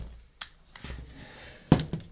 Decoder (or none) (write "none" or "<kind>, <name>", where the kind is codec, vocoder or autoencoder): none